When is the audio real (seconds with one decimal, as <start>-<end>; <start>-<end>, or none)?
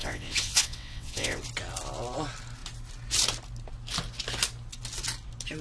1.4-5.6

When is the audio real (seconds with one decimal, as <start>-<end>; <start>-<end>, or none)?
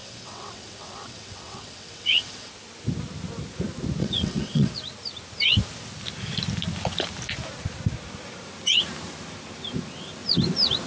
2.5-4.0; 4.7-10.9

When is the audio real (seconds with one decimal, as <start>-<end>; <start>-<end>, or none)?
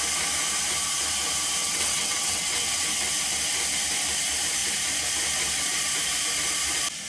0.0-1.6; 2.8-7.1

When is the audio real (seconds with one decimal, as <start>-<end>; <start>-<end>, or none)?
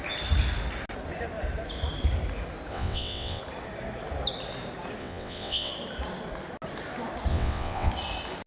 0.0-2.7; 3.4-5.0; 5.7-7.3; 7.9-8.5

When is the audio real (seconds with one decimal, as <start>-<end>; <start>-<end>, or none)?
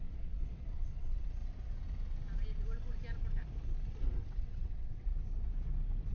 1.4-3.9; 5.1-6.1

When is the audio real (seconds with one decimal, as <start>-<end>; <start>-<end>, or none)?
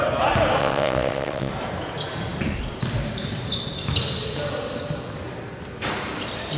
0.0-0.6; 1.5-6.6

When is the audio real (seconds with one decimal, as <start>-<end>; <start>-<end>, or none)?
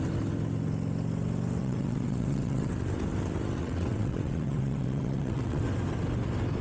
0.0-1.6; 2.7-3.6; 5.6-6.6